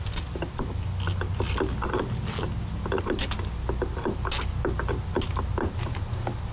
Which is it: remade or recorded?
recorded